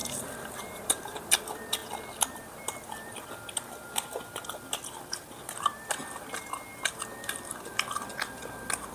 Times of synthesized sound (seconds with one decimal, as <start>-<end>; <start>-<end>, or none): 0.0-1.3